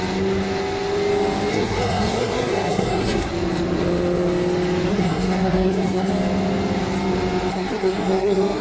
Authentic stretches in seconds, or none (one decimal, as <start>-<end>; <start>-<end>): 0.0-1.5; 3.3-4.9; 6.1-7.5